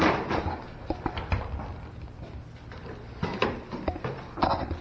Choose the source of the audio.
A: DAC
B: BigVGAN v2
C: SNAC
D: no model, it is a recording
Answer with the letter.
D